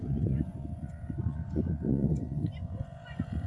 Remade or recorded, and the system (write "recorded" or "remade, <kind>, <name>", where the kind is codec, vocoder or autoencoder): remade, vocoder, Vocos